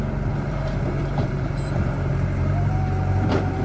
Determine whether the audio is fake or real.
fake